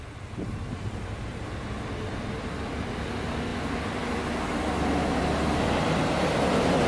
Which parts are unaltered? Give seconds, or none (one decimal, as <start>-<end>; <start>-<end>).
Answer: 0.0-6.9